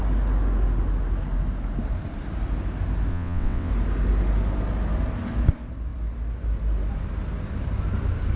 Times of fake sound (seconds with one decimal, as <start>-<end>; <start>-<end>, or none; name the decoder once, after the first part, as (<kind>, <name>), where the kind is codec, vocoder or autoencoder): 3.1-3.7 (vocoder, WaveNeXt)